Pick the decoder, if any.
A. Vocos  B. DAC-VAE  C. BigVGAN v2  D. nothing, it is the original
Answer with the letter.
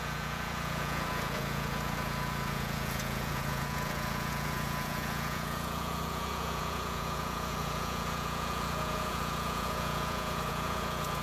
A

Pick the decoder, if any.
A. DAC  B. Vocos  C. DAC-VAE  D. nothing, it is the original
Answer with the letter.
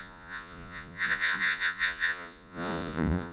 B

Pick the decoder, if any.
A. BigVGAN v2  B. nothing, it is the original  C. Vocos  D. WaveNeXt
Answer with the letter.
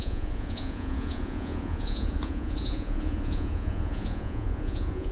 C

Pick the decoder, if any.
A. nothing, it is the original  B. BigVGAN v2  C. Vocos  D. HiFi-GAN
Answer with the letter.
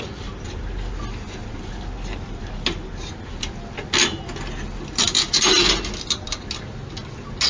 A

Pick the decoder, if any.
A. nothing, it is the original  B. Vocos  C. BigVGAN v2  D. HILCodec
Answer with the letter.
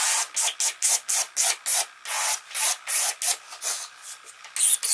A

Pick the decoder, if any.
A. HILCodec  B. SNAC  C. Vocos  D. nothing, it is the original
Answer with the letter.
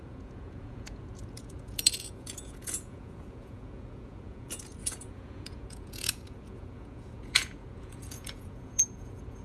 C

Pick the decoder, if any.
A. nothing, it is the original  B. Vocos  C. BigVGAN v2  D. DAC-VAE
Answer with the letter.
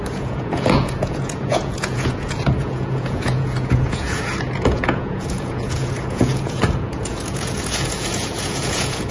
B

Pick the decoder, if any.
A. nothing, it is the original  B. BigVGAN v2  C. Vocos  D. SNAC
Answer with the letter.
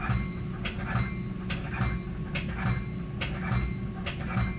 A